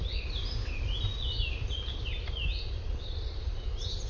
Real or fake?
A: real